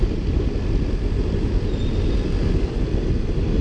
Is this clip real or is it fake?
real